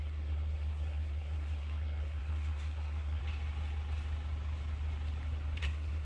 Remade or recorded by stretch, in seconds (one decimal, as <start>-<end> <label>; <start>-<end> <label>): 0.0-3.2 remade; 3.2-5.6 recorded; 5.6-6.0 remade